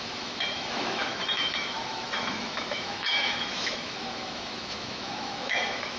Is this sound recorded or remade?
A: remade